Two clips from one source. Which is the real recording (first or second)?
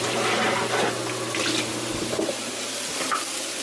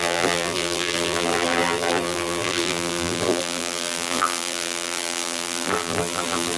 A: first